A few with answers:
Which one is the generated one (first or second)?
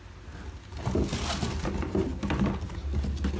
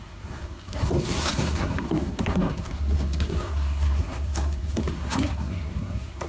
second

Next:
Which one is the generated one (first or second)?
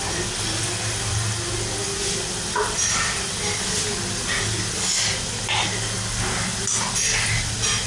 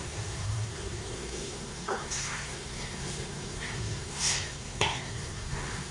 second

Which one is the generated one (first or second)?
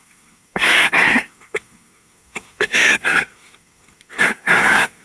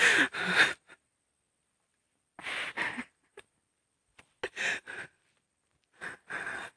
first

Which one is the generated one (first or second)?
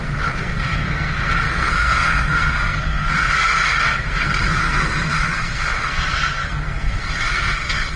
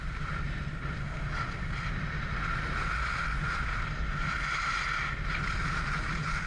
first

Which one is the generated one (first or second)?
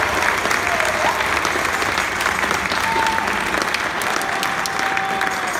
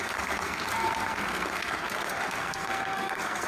second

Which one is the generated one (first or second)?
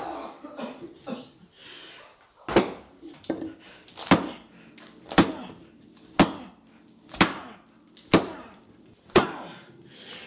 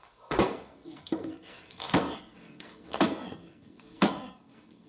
second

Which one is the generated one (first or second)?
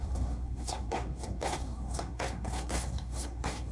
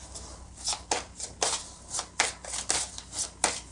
first